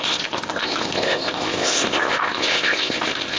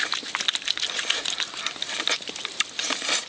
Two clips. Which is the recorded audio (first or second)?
second